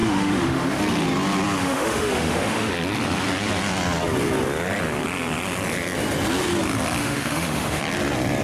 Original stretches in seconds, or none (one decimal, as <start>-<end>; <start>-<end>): 0.8-1.6; 2.7-7.0; 7.8-8.4